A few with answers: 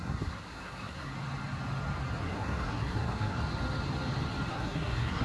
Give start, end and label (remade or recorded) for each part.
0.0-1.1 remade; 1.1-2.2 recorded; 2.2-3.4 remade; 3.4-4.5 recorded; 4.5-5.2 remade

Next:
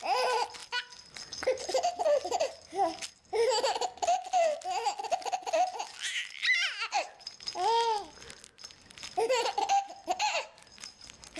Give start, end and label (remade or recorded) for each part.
0.0-11.4 recorded

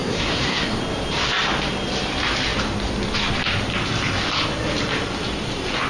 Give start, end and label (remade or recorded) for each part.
0.0-0.8 remade; 0.8-5.9 recorded

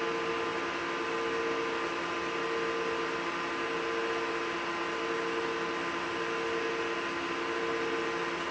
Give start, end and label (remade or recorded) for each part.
0.0-8.5 recorded

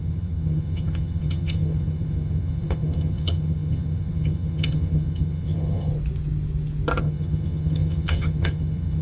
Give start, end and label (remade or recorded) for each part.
0.0-5.9 remade; 5.9-7.0 recorded; 7.0-9.0 remade

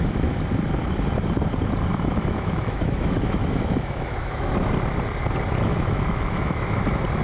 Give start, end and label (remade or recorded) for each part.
0.0-1.9 recorded; 1.9-4.7 remade; 4.7-5.7 recorded; 5.7-6.8 remade; 6.8-7.2 recorded

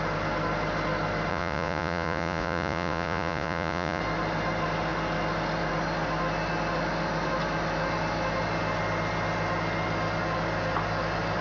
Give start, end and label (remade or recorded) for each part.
0.0-1.3 recorded; 1.3-4.0 remade; 4.0-11.4 recorded

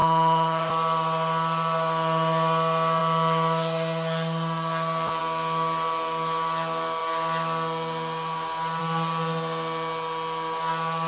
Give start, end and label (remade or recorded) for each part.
0.0-0.7 remade; 0.7-11.1 recorded